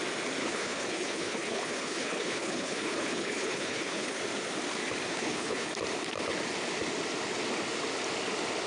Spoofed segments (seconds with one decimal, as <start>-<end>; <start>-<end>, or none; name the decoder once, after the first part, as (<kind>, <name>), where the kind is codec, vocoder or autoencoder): 0.4-4.2 (codec, HILCodec); 5.1-5.7